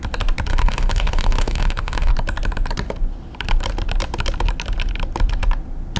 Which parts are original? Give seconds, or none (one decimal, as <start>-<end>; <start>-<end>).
0.0-0.5; 2.1-6.0